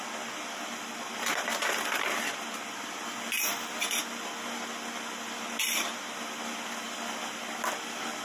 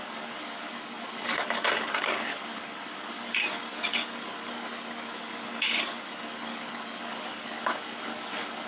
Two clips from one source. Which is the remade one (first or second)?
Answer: second